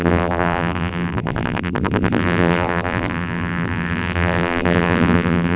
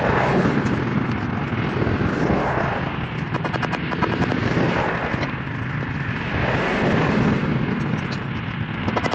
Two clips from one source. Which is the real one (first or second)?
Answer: second